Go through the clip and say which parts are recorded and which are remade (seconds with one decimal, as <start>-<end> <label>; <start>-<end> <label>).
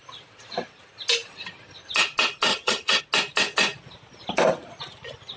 0.0-2.5 recorded; 2.5-3.0 remade; 3.0-5.4 recorded